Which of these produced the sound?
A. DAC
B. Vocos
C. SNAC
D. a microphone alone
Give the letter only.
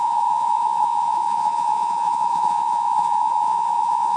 B